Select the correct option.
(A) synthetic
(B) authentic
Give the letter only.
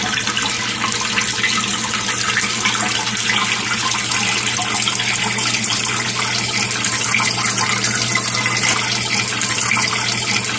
B